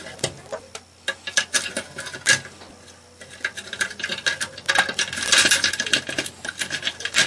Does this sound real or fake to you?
real